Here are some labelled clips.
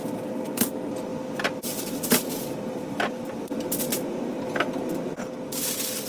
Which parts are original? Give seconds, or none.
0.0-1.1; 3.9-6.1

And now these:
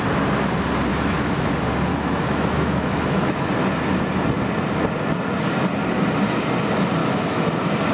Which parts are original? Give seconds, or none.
0.0-0.9; 1.5-1.9; 3.5-7.0; 7.5-7.9

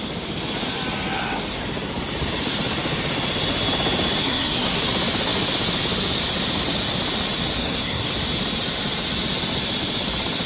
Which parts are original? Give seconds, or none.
0.0-4.2; 4.8-7.6; 8.1-10.5

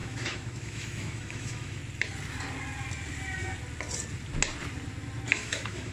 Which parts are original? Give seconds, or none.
1.8-5.3

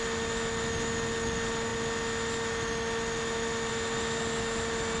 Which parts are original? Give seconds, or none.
0.0-5.0